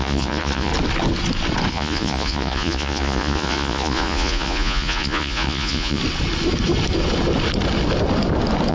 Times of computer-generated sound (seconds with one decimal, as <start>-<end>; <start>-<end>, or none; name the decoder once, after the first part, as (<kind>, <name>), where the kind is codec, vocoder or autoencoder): 0.0-0.7 (vocoder, Vocos); 1.7-6.0